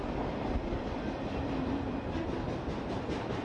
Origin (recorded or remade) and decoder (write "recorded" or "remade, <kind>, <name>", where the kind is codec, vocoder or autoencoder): recorded